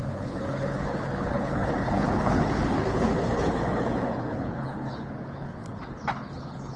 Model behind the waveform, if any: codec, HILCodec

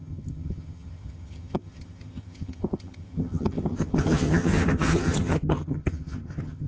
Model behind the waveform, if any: vocoder, HiFi-GAN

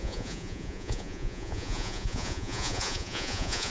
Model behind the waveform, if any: vocoder, Vocos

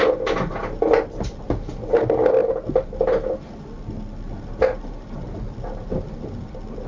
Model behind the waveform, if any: none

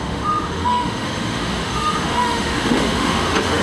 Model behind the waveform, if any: autoencoder, DAC-VAE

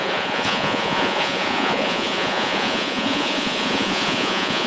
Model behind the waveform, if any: vocoder, Vocos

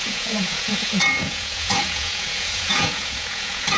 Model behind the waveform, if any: vocoder, Vocos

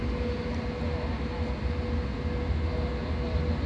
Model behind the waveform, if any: none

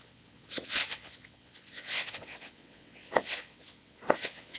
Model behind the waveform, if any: vocoder, WaveNeXt